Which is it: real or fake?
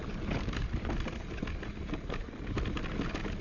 real